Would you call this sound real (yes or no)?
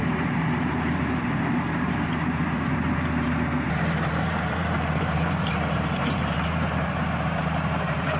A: no